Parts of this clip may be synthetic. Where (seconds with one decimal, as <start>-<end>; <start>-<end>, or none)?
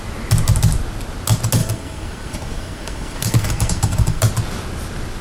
1.6-4.2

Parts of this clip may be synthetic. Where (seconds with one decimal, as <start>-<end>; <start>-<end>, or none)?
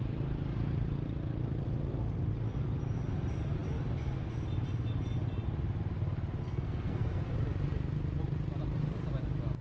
6.4-7.3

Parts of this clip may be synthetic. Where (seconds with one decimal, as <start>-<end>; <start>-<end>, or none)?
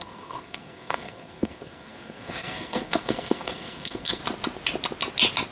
0.0-4.2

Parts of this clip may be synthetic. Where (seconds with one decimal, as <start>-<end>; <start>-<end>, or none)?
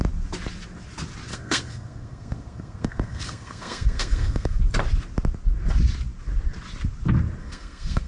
1.3-4.6; 7.4-8.1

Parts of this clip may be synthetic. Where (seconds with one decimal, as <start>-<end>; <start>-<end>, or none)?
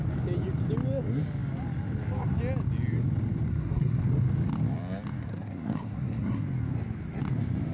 3.5-4.0; 5.3-6.4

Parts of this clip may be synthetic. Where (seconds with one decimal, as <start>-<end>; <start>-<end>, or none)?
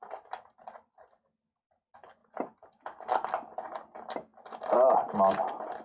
none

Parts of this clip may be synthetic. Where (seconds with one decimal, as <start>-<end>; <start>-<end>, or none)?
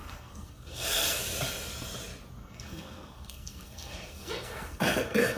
0.0-1.2; 2.4-5.4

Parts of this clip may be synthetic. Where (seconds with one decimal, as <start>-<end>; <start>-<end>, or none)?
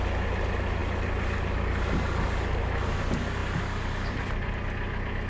none